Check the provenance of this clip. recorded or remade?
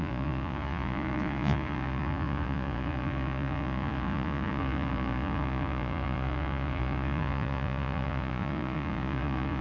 remade